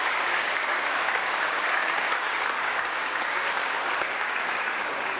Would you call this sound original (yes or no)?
no